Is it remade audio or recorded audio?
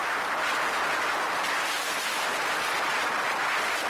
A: recorded